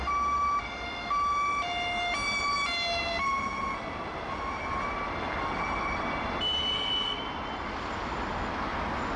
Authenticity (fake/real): real